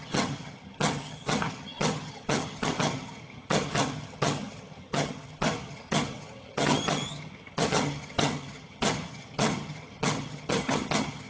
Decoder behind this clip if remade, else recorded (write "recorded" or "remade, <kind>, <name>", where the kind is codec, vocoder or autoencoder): remade, vocoder, HiFi-GAN